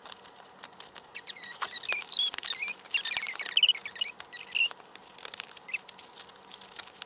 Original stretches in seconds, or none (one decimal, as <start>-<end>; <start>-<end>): 0.0-1.1; 1.7-7.1